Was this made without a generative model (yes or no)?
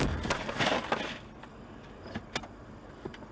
yes